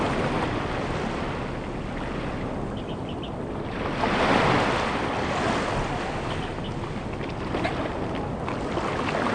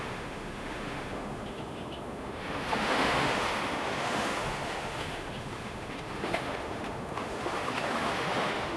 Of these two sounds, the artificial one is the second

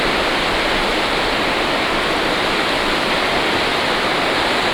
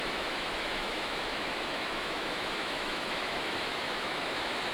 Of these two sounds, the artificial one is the second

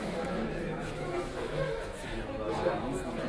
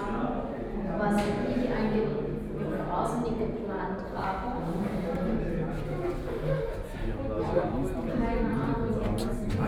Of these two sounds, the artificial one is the first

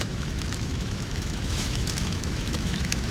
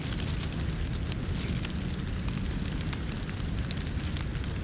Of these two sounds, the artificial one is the first